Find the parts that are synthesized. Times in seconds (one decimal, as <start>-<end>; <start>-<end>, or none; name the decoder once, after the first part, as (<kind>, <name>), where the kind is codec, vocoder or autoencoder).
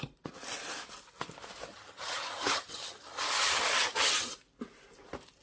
1.7-4.3 (vocoder, HiFi-GAN)